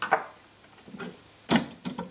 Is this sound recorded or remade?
recorded